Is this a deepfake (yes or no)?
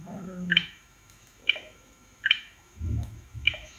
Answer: yes